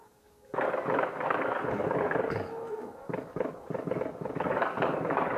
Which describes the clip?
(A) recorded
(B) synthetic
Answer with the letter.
B